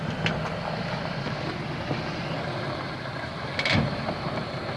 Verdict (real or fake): real